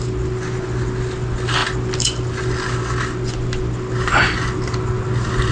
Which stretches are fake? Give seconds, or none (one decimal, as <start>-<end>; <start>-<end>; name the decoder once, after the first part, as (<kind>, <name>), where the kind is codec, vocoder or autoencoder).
none